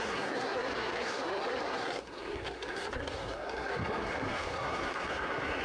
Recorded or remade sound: remade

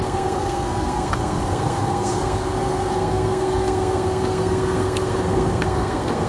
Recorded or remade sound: remade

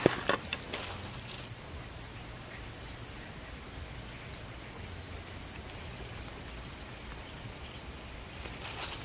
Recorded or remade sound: recorded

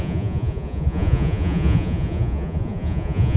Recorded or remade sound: remade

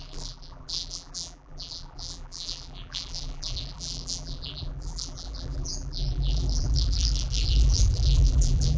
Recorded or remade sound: remade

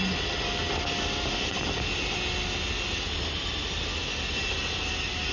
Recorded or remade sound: recorded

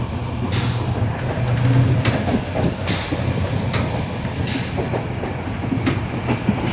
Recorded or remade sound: recorded